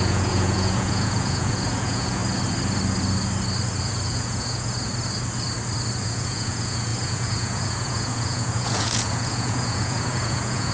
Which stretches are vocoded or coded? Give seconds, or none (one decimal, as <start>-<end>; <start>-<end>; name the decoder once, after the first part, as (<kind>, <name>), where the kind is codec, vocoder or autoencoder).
0.0-2.2 (vocoder, Vocos); 3.8-4.9; 6.0-10.7